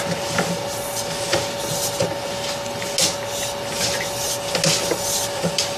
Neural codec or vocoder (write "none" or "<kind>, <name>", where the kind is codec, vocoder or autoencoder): none